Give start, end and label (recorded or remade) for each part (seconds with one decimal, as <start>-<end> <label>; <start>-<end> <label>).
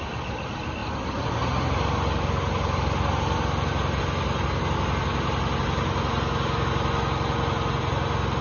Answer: 0.0-8.4 recorded